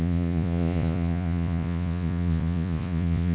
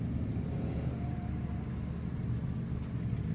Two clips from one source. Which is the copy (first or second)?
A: first